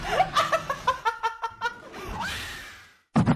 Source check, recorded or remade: recorded